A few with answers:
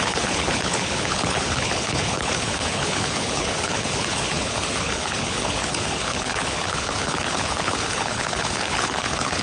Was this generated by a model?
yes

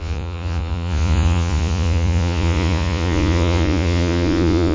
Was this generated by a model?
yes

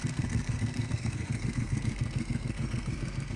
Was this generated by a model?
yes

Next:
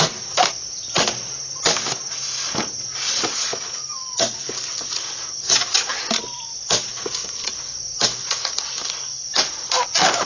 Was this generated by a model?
no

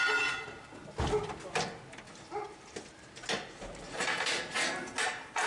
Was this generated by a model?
no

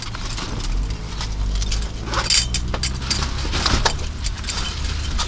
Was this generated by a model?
no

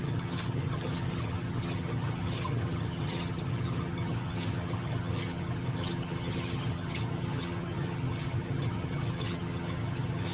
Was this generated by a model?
yes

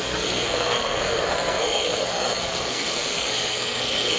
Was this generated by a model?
yes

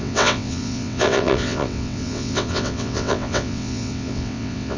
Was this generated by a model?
yes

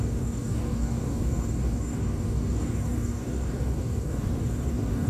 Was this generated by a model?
yes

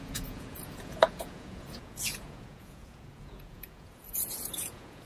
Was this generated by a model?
yes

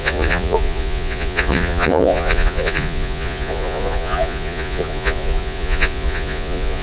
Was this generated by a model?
yes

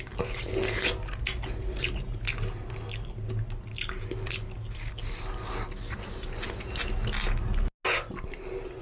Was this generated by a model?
no